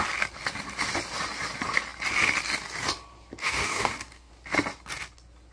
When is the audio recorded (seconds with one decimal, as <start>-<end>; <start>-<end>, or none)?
0.0-3.4; 4.3-5.5